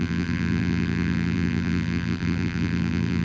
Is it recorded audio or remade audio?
remade